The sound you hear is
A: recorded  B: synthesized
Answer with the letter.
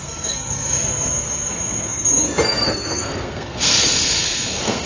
B